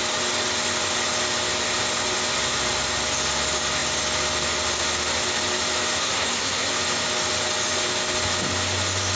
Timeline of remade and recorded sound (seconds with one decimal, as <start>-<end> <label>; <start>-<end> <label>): 0.0-6.0 recorded; 6.0-6.7 remade; 6.7-9.2 recorded